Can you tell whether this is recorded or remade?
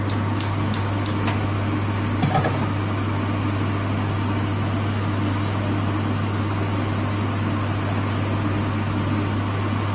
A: recorded